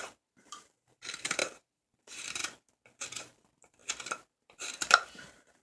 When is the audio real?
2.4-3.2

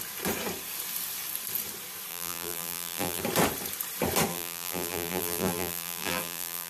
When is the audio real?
0.0-2.1; 3.2-4.3

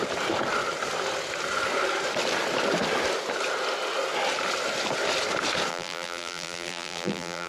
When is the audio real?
0.0-5.7

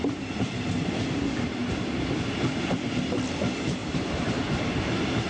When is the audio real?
0.0-3.8; 4.4-5.3